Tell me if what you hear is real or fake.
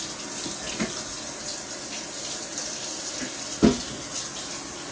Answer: real